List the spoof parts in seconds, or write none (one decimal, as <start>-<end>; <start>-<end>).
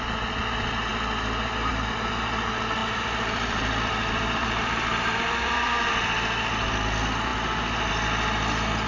2.8-5.9